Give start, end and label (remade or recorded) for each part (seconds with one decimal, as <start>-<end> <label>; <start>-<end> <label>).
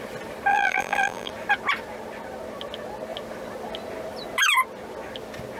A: 0.0-0.5 recorded; 0.5-1.3 remade; 1.3-5.6 recorded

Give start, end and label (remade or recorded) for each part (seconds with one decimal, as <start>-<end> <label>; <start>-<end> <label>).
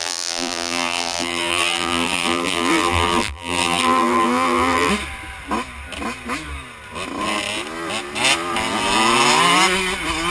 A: 0.0-4.9 remade; 4.9-10.3 recorded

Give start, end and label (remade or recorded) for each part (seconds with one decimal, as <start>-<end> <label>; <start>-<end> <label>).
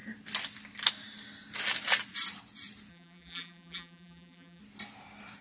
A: 0.0-2.9 recorded; 2.9-4.6 remade; 4.6-5.4 recorded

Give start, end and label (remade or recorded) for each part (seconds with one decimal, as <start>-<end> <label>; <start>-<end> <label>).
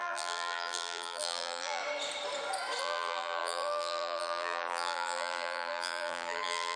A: 0.0-1.8 remade; 1.8-2.8 recorded; 2.8-6.8 remade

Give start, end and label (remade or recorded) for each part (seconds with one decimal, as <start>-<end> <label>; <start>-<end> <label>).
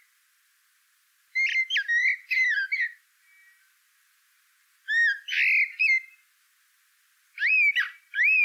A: 0.0-8.4 recorded